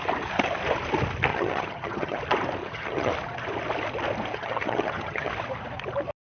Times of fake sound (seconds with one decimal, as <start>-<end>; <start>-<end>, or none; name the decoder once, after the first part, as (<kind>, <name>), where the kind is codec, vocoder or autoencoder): 1.3-2.2 (vocoder, HiFi-GAN); 2.6-3.1; 4.3-5.3